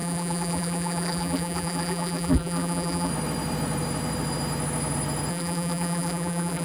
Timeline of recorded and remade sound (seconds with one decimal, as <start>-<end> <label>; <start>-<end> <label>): 0.0-3.1 remade; 3.1-5.3 recorded; 5.3-6.6 remade